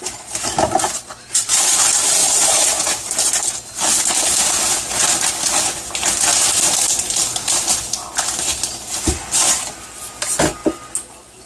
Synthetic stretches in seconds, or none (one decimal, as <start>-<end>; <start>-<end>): none